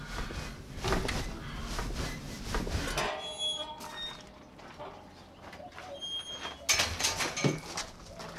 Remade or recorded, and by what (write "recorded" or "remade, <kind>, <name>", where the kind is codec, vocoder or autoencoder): recorded